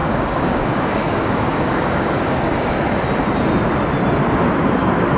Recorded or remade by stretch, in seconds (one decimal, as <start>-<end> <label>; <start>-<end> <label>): 0.0-2.7 remade; 2.7-5.2 recorded